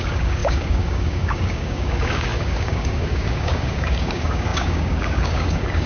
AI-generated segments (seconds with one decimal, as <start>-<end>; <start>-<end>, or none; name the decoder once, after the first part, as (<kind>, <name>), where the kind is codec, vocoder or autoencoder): 0.0-5.9 (codec, DAC)